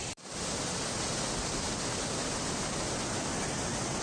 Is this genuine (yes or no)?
yes